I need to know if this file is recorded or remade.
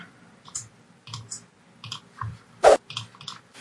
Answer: recorded